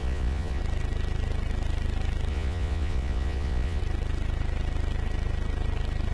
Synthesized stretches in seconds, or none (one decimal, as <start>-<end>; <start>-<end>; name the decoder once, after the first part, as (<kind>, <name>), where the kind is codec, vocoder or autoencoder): 0.0-0.6 (vocoder, Vocos); 2.3-3.8